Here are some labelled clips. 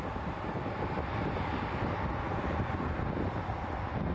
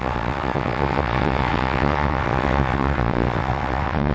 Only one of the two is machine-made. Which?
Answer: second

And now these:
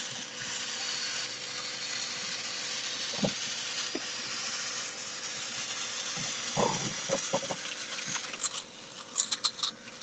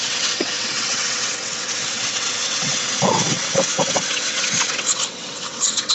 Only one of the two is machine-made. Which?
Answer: second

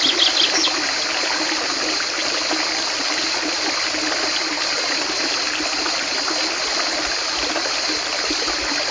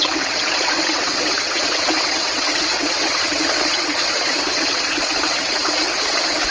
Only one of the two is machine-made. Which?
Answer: second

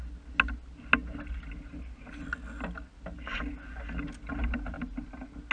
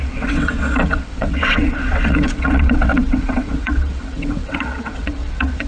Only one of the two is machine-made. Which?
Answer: second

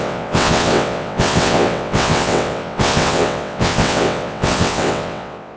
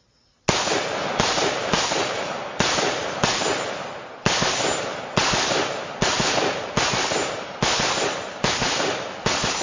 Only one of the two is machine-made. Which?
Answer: first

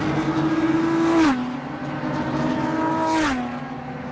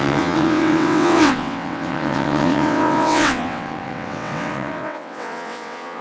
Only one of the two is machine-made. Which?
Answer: second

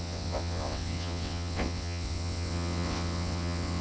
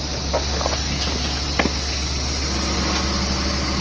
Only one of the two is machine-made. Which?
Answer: first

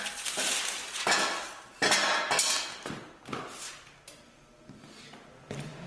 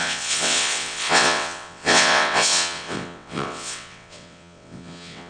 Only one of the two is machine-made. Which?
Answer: second